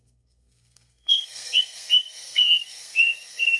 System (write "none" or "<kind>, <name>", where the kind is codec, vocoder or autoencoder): codec, SNAC